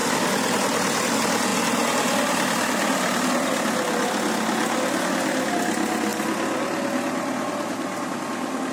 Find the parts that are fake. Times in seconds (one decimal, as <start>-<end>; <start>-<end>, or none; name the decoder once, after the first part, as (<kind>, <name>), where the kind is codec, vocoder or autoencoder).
none